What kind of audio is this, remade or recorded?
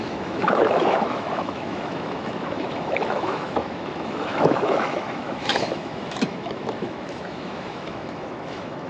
remade